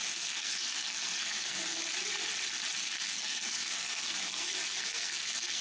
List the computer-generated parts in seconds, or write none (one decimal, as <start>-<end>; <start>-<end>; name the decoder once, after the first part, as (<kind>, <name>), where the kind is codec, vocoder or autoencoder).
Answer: 0.0-1.8 (codec, SNAC); 2.8-5.6